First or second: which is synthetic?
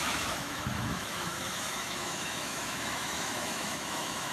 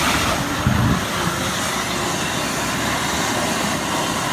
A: first